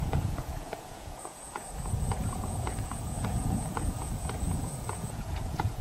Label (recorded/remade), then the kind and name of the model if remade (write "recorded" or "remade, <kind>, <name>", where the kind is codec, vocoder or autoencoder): remade, vocoder, Vocos